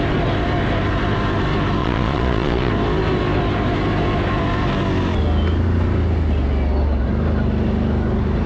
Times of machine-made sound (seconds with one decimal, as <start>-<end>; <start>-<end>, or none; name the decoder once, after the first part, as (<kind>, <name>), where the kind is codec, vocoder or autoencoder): 1.8-2.7 (vocoder, Vocos)